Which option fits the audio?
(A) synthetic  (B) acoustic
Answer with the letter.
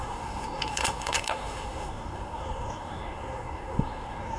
A